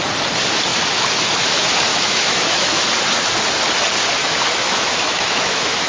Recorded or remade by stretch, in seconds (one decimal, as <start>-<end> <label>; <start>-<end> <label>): 0.0-1.9 recorded; 1.9-2.9 remade; 2.9-4.2 recorded; 4.2-5.9 remade